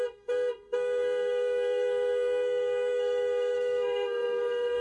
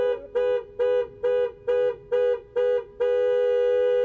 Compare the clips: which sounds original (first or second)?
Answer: second